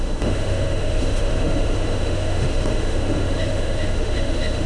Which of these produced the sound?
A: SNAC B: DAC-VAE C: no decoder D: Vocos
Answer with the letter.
B